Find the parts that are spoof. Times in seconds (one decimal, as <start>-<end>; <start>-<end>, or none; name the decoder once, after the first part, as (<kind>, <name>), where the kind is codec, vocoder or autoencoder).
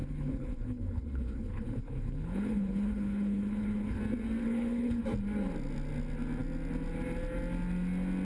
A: 0.0-4.0 (codec, HILCodec); 4.4-5.0